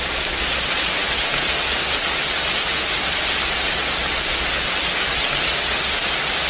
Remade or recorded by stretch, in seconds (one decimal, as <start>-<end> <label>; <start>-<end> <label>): 0.0-6.5 recorded